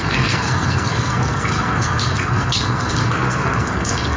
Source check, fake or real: fake